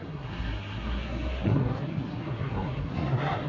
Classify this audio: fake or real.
fake